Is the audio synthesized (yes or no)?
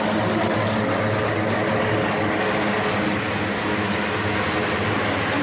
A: no